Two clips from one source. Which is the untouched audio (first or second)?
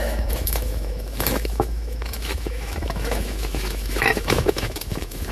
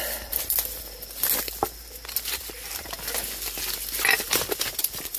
second